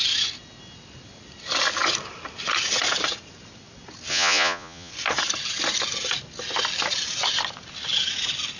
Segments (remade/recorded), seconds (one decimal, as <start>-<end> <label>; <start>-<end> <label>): 0.0-4.1 recorded; 4.1-4.9 remade; 4.9-8.6 recorded